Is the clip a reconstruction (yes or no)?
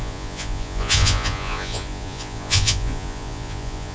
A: yes